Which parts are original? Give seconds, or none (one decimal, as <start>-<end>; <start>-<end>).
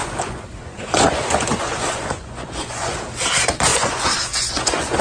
3.0-3.7